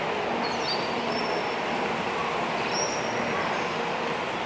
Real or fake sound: real